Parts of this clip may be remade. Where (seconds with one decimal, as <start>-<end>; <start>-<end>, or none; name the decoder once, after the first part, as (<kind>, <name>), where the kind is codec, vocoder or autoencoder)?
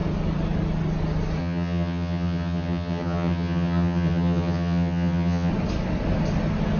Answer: 1.4-5.5 (vocoder, HiFi-GAN)